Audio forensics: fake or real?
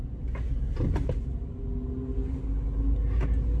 real